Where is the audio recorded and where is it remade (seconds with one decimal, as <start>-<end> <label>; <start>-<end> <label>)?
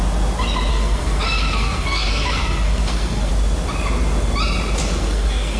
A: 0.0-0.7 recorded; 0.7-3.3 remade; 3.3-4.8 recorded; 4.8-5.6 remade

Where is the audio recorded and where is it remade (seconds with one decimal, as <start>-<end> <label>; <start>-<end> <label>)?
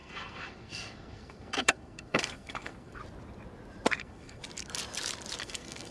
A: 0.0-3.0 remade; 3.0-4.0 recorded; 4.0-4.4 remade; 4.4-5.4 recorded; 5.4-5.9 remade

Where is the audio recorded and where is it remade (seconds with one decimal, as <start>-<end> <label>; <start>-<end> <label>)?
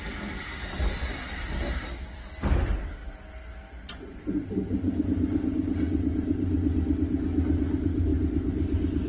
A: 0.0-9.1 recorded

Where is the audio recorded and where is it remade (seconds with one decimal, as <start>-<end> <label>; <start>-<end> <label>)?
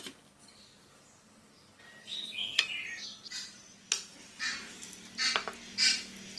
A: 0.0-2.0 recorded; 2.0-2.6 remade; 2.6-6.4 recorded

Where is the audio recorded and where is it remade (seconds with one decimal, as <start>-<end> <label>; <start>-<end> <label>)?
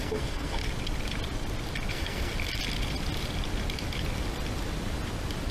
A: 0.0-0.6 remade; 0.6-1.9 recorded; 1.9-2.3 remade; 2.3-5.5 recorded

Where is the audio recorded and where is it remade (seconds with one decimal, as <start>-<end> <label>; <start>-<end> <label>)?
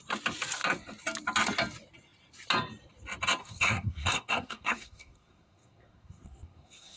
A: 0.0-3.4 recorded; 3.4-7.0 remade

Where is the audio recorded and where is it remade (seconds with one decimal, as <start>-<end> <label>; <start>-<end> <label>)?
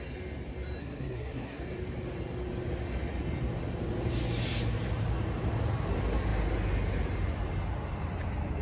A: 0.0-0.8 recorded; 0.8-1.6 remade; 1.6-8.6 recorded